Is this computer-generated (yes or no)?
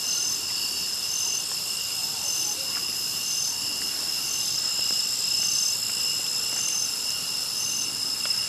no